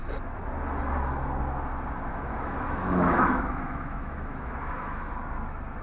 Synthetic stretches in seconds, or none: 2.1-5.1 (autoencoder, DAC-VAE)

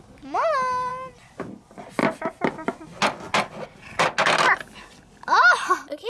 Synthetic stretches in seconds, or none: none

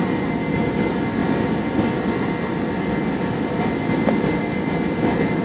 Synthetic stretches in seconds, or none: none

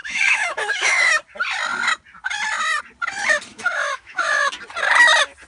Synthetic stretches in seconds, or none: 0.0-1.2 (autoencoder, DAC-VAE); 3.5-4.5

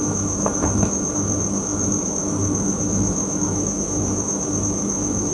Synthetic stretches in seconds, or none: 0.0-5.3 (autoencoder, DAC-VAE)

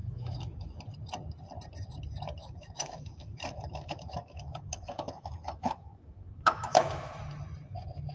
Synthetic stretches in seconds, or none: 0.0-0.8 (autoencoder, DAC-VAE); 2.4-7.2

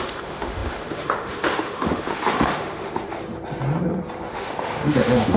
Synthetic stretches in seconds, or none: 0.0-3.2 (autoencoder, DAC-VAE); 4.3-5.4

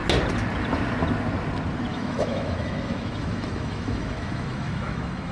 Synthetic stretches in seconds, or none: 1.9-5.3 (autoencoder, DAC-VAE)